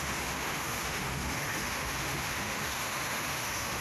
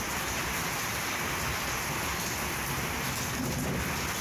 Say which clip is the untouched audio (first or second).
second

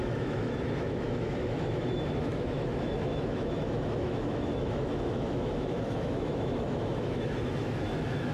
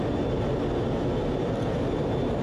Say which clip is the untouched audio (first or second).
second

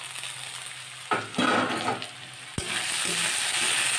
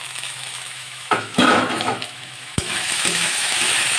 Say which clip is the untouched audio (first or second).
first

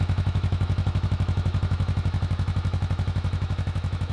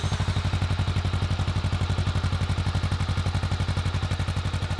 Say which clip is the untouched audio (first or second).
second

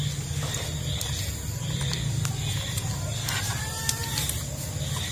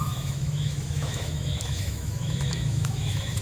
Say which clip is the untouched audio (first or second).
first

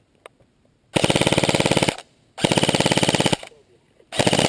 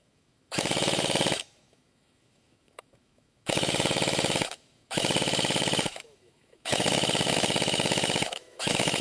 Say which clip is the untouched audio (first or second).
first